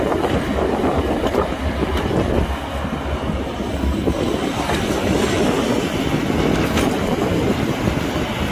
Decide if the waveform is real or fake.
real